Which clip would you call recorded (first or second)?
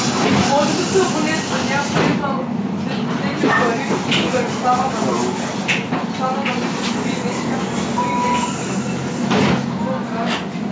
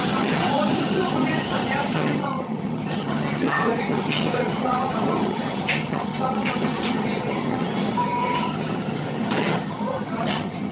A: first